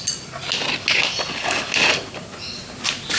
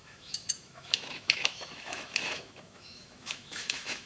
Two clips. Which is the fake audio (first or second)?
second